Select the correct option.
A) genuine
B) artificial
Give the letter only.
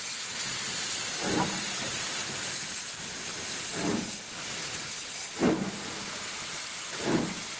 A